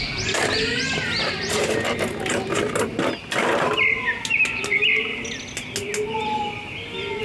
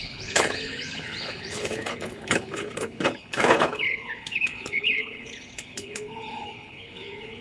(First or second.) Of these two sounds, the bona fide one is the first